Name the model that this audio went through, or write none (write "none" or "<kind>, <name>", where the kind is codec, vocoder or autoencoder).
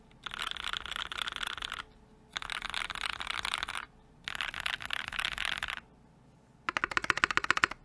none